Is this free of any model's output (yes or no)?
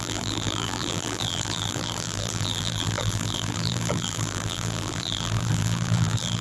no